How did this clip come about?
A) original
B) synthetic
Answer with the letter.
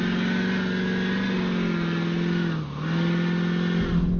A